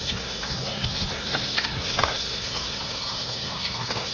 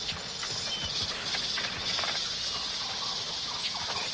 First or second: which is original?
second